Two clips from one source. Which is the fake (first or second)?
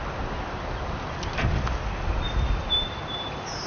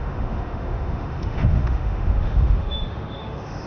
second